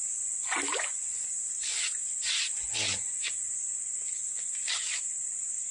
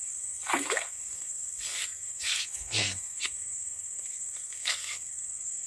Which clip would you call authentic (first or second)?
first